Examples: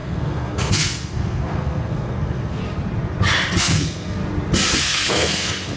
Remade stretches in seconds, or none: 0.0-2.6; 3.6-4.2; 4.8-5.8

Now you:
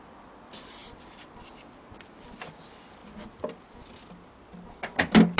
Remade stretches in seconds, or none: 0.8-1.4

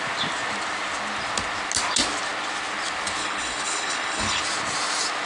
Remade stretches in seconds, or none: 3.2-4.4

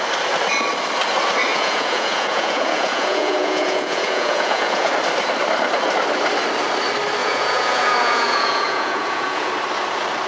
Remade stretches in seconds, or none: 1.5-4.9; 7.2-9.5

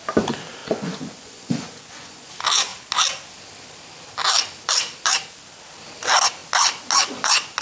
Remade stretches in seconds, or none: 0.6-2.3

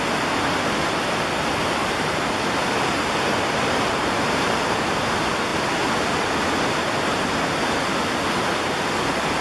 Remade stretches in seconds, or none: 1.8-4.5

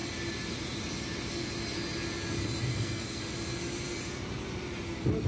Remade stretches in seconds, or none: 2.7-3.2

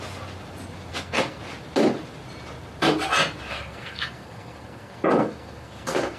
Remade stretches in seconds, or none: 0.9-1.4; 3.5-6.2